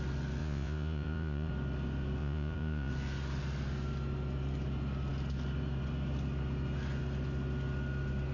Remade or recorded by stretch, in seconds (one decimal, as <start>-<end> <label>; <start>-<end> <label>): 0.0-0.4 recorded; 0.4-1.5 remade; 1.5-2.2 recorded; 2.2-2.9 remade; 2.9-8.3 recorded